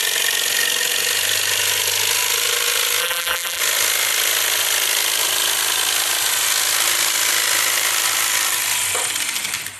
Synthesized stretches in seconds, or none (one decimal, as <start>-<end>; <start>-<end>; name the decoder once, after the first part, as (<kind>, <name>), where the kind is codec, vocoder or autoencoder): 3.0-3.6 (vocoder, BigVGAN v2)